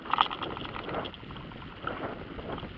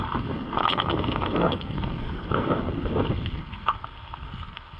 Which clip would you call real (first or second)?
first